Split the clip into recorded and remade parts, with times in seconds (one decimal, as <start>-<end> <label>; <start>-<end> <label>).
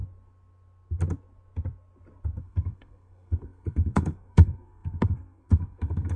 0.0-2.4 recorded; 2.4-6.2 remade